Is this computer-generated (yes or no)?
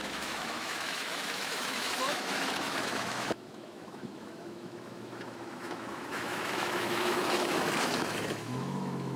yes